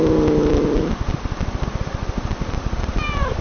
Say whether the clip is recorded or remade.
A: remade